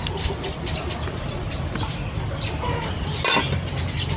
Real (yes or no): yes